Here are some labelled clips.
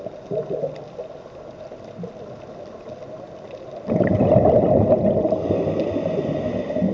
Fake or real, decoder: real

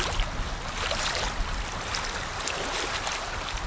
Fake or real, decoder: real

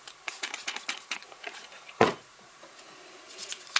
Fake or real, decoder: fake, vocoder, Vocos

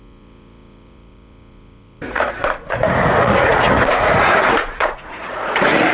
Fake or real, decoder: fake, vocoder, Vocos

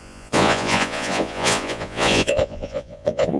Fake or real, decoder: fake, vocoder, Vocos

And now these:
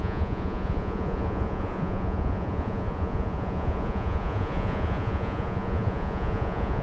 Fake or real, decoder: fake, vocoder, Vocos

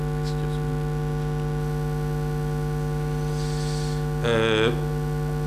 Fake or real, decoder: real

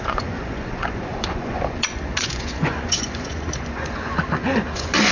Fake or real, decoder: fake, vocoder, Vocos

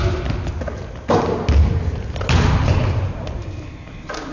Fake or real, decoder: real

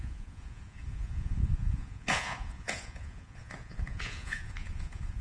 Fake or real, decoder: fake, vocoder, Vocos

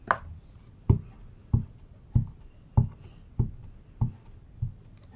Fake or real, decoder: real